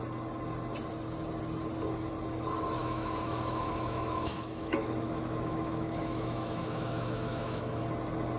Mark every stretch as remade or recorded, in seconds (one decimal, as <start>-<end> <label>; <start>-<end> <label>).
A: 0.0-2.8 recorded; 2.8-7.8 remade; 7.8-8.4 recorded